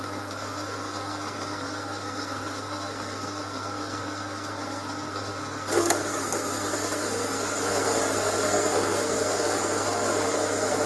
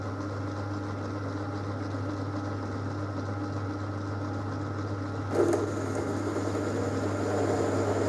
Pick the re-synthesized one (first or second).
first